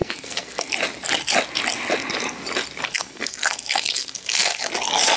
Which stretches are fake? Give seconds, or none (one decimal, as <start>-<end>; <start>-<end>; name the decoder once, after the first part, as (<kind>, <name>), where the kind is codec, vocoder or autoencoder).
0.0-0.7 (codec, SNAC); 2.9-4.6